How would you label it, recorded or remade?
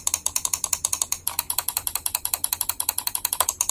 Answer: recorded